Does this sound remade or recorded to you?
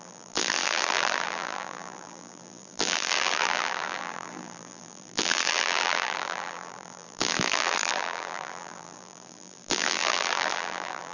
remade